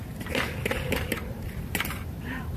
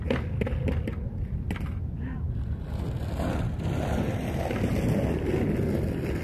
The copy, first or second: first